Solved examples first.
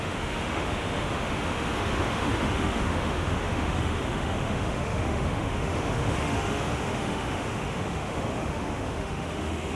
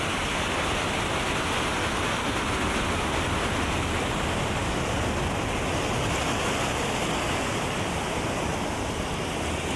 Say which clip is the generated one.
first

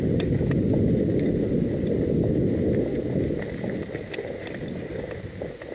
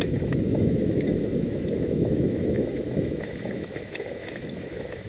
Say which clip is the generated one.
second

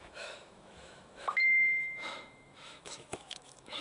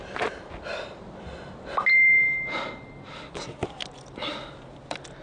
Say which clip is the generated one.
first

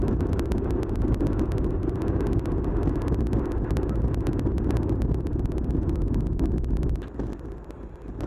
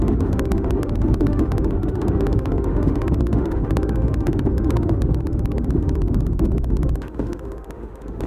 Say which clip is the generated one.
second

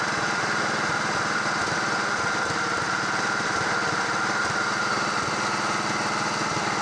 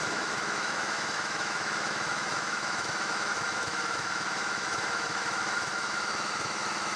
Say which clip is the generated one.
second